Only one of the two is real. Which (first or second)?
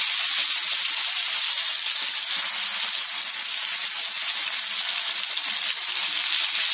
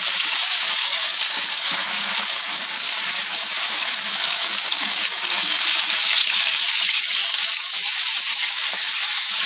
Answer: first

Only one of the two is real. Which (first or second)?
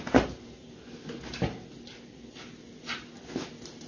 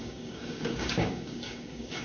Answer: first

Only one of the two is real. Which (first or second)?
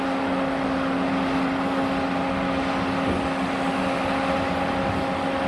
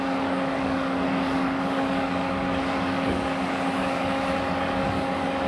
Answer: first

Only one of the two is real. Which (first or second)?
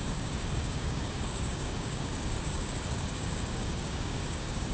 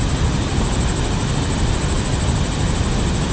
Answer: second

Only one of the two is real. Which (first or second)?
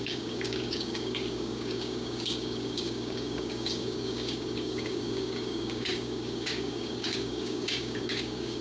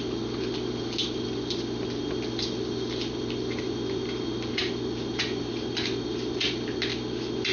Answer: second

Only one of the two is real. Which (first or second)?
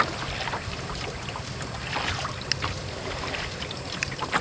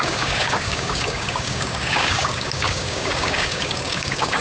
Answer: first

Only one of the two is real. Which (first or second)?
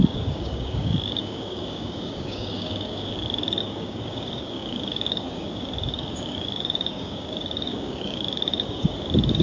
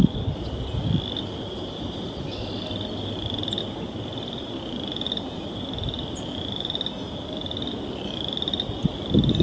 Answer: second